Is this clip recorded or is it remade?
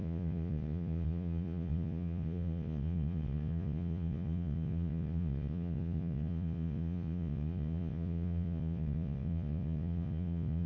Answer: remade